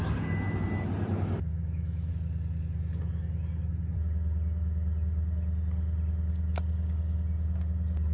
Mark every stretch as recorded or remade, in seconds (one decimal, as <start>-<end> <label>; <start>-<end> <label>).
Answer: 0.0-1.5 recorded; 1.5-2.1 remade; 2.1-8.1 recorded